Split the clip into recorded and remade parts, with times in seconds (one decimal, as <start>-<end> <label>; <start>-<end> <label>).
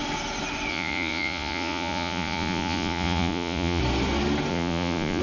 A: 0.0-0.7 recorded; 0.7-3.8 remade; 3.8-4.5 recorded; 4.5-5.2 remade